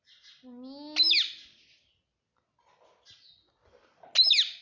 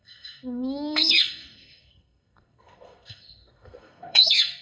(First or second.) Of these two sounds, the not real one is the second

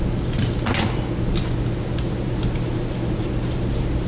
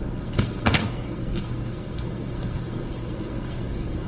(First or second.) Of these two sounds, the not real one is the second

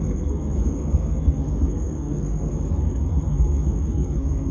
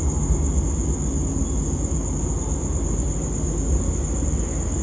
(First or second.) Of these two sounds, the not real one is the first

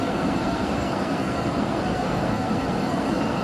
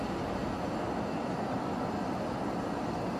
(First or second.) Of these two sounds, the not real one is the first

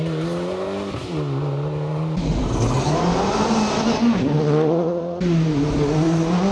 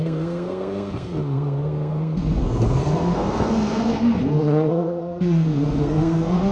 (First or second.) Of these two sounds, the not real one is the second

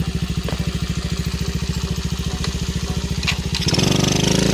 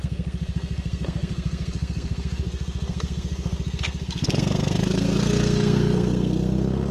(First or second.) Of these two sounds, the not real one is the second